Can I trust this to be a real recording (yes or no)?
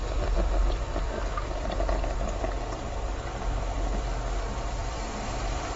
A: no